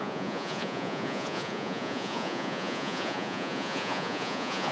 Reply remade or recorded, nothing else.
remade